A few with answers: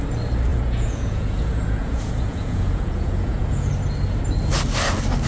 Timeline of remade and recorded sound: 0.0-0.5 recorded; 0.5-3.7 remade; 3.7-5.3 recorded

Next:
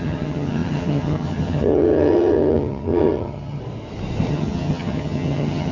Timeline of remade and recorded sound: 0.0-3.6 remade; 3.6-4.3 recorded; 4.3-5.7 remade

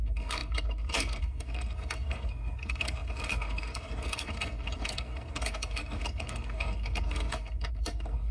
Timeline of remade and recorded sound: 0.0-8.3 remade